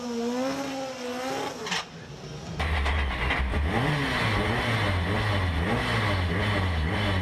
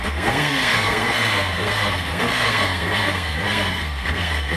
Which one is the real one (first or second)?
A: first